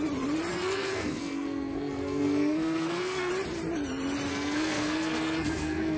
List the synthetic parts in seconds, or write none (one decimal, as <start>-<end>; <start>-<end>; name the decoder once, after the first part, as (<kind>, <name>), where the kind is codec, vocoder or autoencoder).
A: 0.5-3.3 (codec, SNAC); 4.3-6.0